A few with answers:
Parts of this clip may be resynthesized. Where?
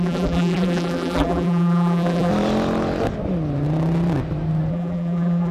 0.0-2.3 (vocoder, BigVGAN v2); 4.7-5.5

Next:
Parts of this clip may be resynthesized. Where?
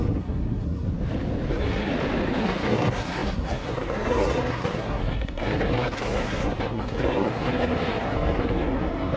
0.0-0.9 (codec, SNAC); 1.5-1.9; 2.4-9.2